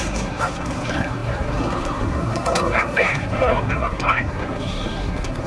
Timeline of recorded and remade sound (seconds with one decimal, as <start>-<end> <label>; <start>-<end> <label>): 0.0-5.5 remade